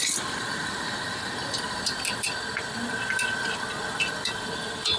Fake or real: real